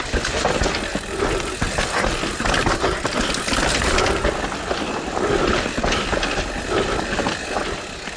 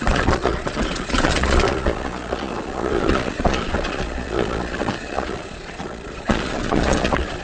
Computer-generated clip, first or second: second